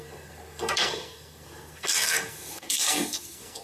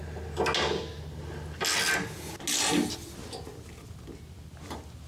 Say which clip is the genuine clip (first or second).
second